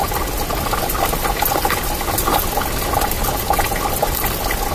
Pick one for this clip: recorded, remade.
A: recorded